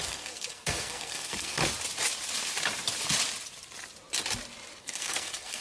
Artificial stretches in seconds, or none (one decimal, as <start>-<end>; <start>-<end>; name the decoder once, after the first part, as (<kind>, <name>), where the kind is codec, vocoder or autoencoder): 0.0-1.6 (codec, SNAC); 4.8-5.6